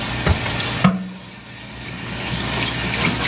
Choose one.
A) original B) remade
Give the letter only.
A